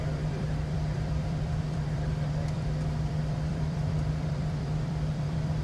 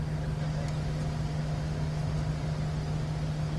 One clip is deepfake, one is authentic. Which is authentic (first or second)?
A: second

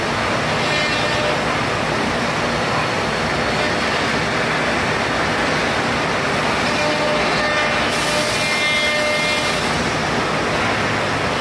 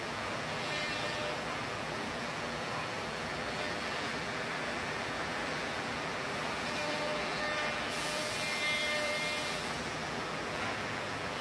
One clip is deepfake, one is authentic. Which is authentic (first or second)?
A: first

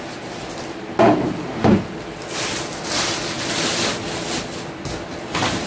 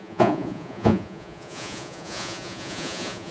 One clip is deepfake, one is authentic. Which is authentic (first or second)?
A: first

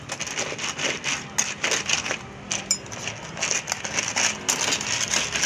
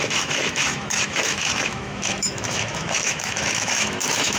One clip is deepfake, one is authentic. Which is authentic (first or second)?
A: first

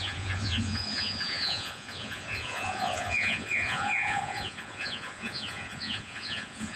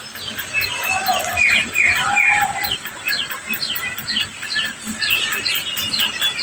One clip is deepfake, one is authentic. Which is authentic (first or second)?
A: second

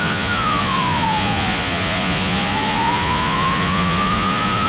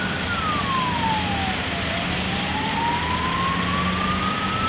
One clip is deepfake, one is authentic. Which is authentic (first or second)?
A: second